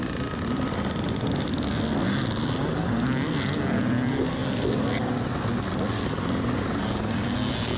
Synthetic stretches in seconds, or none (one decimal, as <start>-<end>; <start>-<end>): none